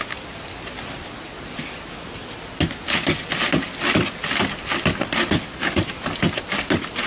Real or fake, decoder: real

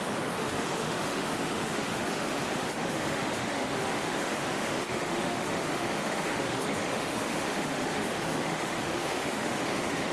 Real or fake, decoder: fake, autoencoder, DAC-VAE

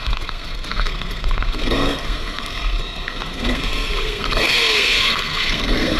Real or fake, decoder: fake, codec, SNAC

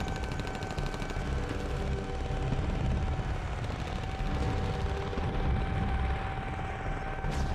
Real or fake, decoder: real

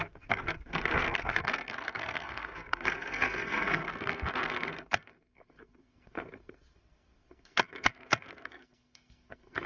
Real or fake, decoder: fake, codec, SNAC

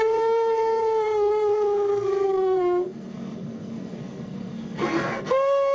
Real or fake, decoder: fake, codec, SNAC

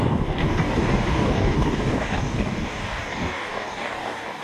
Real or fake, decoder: fake, codec, DAC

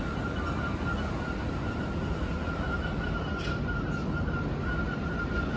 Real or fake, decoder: real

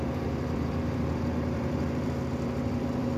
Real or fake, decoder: fake, vocoder, BigVGAN v2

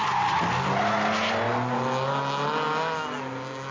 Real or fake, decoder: real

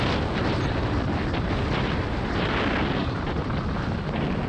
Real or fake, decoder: real